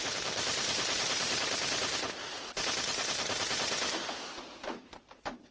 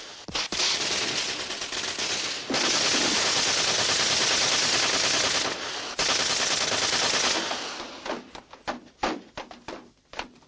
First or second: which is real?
second